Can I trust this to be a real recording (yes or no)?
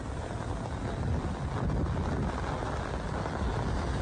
yes